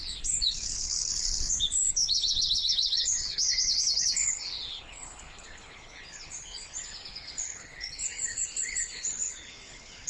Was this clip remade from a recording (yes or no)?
yes